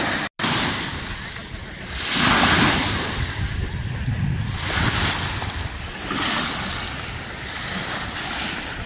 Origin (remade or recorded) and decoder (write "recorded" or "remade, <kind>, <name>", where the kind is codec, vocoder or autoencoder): recorded